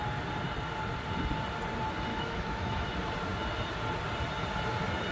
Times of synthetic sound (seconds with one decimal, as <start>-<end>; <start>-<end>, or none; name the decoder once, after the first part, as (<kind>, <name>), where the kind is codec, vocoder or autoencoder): 2.1-2.9 (autoencoder, DAC-VAE)